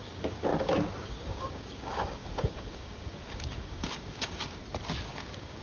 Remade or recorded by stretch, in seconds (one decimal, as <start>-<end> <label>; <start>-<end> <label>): 0.0-0.5 remade; 0.5-1.0 recorded; 1.0-4.6 remade; 4.6-5.1 recorded; 5.1-5.6 remade